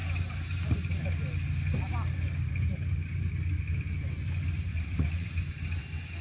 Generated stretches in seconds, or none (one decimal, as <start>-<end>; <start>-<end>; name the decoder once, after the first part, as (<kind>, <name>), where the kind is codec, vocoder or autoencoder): 4.7-5.3 (vocoder, WaveNeXt)